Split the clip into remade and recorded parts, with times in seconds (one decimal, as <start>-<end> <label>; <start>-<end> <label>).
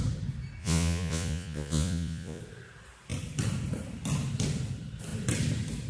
0.0-0.6 recorded; 0.6-2.4 remade; 2.4-5.9 recorded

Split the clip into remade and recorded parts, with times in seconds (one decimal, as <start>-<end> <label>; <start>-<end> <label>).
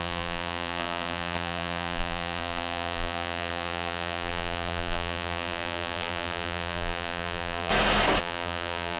0.0-7.7 remade; 7.7-8.2 recorded; 8.2-9.0 remade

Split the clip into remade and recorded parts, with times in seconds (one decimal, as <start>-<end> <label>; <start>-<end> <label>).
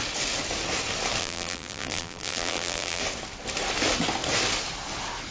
0.0-1.2 recorded; 1.2-3.0 remade; 3.0-5.3 recorded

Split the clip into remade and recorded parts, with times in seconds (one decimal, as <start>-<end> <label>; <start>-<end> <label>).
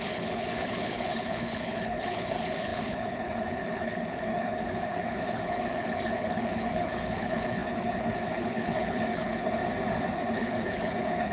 0.0-9.6 remade; 9.6-10.1 recorded; 10.1-11.3 remade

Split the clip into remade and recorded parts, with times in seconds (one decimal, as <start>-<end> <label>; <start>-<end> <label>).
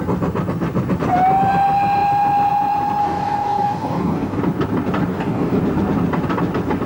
0.0-3.0 recorded; 3.0-4.4 remade; 4.4-5.1 recorded; 5.1-5.6 remade; 5.6-6.9 recorded